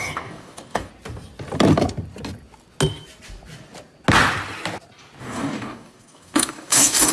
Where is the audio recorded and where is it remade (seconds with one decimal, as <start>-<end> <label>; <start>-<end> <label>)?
0.0-0.9 remade; 0.9-5.2 recorded; 5.2-7.1 remade